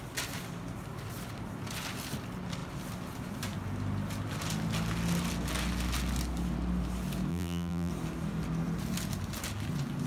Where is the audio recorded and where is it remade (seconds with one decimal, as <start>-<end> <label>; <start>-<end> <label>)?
0.0-7.3 recorded; 7.3-7.9 remade; 7.9-10.1 recorded